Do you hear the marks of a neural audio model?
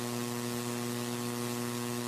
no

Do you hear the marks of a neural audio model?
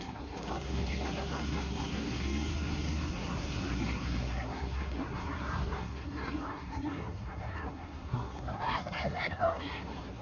yes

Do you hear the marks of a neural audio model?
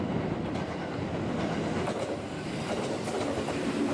no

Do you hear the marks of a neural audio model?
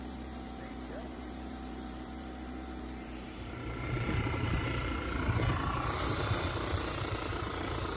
yes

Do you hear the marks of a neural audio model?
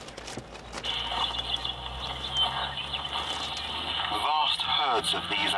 no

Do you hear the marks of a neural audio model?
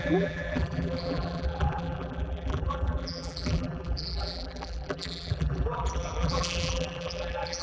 yes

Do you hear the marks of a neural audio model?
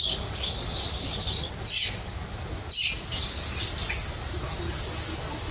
no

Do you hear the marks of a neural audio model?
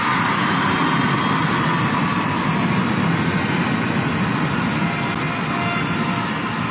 no